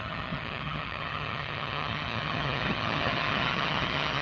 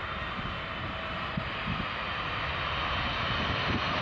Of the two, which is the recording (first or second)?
second